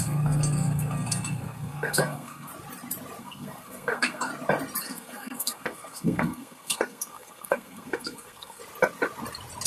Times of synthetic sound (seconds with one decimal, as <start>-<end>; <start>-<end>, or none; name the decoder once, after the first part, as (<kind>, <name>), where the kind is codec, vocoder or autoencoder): 0.0-2.5 (codec, SNAC); 3.2-4.3; 4.8-8.6